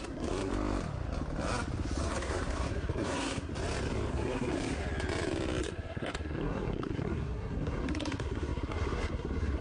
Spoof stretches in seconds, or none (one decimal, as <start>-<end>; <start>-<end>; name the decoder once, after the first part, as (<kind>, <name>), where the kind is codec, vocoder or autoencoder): 0.0-0.5 (codec, SNAC); 2.0-3.5; 4.1-4.8; 5.6-9.6